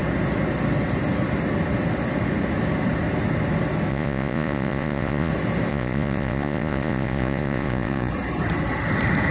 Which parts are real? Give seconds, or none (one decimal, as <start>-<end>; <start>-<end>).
0.0-3.9; 5.3-5.7; 8.1-9.3